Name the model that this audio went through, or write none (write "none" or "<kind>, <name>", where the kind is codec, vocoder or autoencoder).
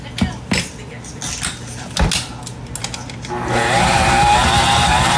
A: none